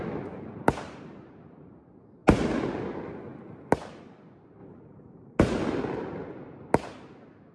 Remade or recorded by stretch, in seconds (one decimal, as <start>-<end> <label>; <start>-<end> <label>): 0.0-7.5 recorded